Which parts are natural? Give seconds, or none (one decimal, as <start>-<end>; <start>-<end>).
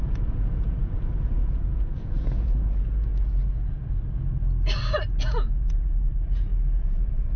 3.1-5.2